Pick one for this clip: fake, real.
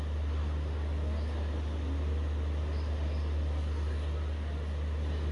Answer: real